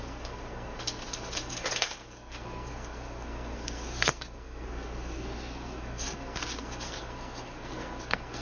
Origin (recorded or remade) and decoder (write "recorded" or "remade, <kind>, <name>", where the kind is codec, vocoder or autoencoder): remade, codec, SNAC